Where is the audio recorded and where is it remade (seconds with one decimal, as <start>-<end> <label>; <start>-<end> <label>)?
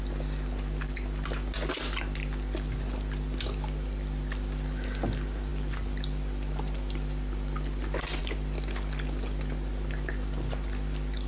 0.0-11.3 recorded